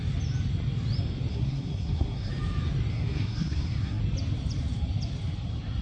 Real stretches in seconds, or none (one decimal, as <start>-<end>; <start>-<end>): 0.0-1.3; 2.3-2.9; 4.0-5.8